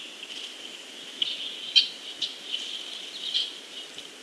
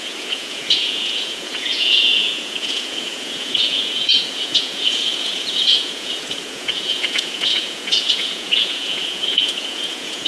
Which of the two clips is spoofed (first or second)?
second